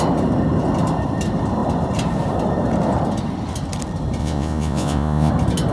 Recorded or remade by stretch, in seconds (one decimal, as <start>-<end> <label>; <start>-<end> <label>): 0.0-4.2 recorded; 4.2-5.3 remade; 5.3-5.7 recorded